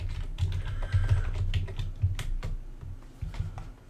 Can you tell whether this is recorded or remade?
recorded